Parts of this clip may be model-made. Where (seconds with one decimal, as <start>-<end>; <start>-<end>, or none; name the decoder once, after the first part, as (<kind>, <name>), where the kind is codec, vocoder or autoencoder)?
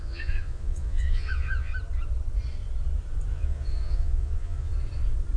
0.0-1.7 (vocoder, Vocos); 3.3-4.7